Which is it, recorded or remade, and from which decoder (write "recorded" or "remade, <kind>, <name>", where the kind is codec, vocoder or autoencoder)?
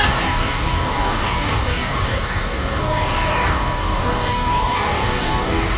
remade, codec, DAC